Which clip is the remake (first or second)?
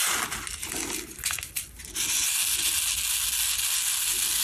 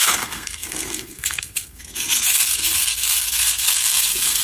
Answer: second